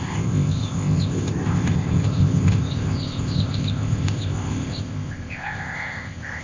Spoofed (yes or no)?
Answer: yes